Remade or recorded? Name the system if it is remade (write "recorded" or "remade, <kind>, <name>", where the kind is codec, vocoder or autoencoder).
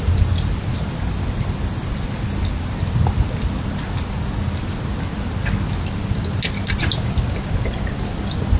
recorded